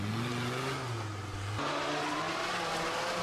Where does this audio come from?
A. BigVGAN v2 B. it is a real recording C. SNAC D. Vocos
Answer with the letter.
B